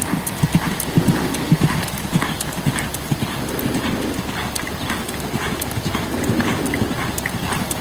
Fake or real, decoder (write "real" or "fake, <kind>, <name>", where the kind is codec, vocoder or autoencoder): real